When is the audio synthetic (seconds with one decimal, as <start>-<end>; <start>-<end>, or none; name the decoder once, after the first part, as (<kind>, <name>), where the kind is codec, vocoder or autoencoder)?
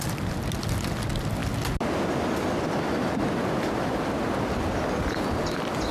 none